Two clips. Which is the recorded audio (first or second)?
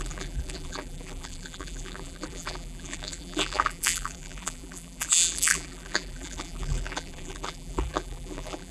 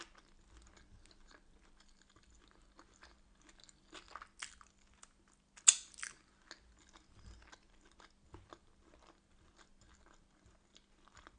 second